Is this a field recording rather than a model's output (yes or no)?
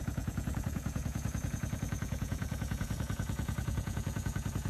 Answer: no